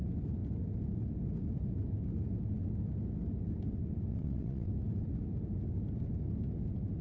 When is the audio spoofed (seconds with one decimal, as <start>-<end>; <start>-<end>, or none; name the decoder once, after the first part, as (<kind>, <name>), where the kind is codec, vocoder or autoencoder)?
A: 4.1-4.7 (vocoder, WaveNeXt)